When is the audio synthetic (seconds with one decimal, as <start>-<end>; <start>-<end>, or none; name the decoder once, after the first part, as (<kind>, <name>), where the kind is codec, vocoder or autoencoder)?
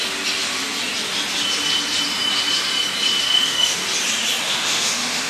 3.2-3.8 (autoencoder, DAC-VAE); 4.4-5.3